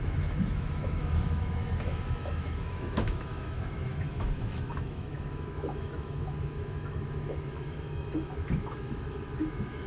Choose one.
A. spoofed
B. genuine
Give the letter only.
A